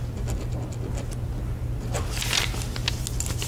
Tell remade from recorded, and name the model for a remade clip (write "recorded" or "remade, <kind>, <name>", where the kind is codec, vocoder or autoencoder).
recorded